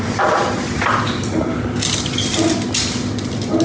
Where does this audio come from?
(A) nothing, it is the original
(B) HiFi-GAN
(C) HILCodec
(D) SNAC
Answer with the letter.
A